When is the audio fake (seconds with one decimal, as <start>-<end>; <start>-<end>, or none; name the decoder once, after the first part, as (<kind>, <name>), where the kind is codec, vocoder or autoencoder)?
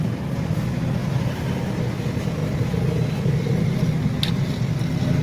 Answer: none